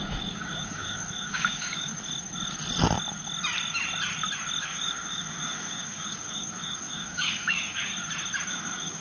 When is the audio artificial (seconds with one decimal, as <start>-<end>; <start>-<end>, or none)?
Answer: 0.0-1.9; 4.6-7.9; 8.5-9.0